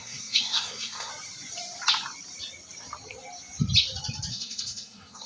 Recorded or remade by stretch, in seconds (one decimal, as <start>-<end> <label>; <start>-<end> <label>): 0.0-1.1 remade; 1.1-4.3 recorded; 4.3-5.3 remade